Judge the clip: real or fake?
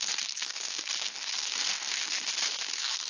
fake